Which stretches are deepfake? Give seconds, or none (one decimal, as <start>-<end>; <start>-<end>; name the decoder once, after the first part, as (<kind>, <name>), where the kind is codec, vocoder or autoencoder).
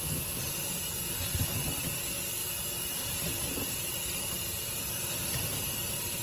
none